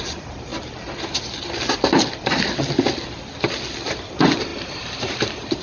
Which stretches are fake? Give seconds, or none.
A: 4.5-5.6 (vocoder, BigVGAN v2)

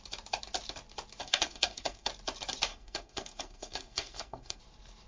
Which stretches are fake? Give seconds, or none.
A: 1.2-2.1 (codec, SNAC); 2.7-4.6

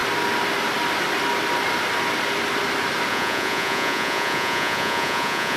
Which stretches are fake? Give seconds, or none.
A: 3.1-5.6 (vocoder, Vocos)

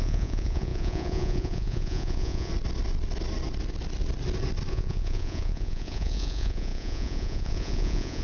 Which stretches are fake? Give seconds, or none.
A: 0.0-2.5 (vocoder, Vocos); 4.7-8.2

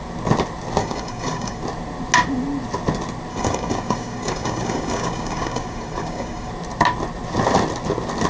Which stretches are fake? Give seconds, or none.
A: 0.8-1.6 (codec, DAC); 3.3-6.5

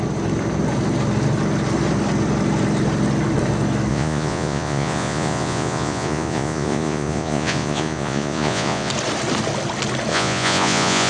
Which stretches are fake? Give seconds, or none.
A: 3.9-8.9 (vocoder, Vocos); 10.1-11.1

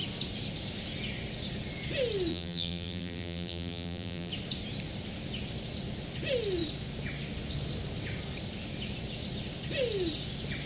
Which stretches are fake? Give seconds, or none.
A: 2.3-4.3 (vocoder, BigVGAN v2)

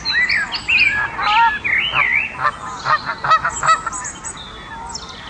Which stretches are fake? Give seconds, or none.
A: none